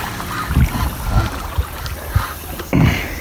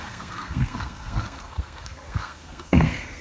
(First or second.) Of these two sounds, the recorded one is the first